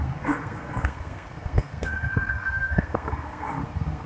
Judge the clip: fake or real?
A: fake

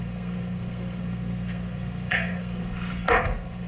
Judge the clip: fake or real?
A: fake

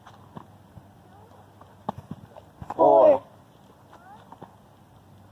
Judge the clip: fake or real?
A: real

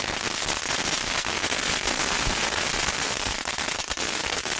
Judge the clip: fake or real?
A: fake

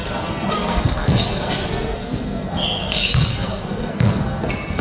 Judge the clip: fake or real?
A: fake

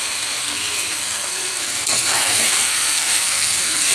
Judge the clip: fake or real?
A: fake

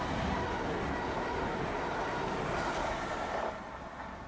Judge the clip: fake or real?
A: real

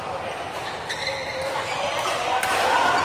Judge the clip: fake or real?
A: real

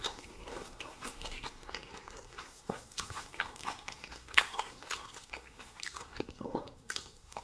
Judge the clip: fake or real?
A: fake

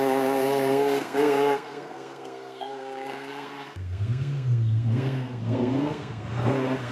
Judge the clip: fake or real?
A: fake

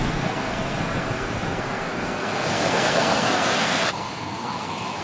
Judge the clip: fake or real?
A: fake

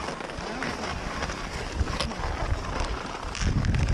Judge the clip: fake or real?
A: real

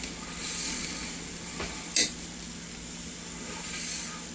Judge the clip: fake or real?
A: real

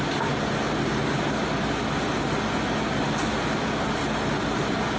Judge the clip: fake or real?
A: real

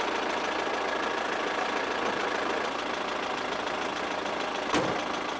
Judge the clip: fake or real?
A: real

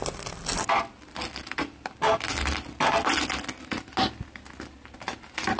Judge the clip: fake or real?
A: real